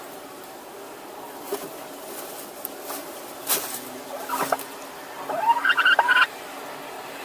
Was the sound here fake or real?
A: real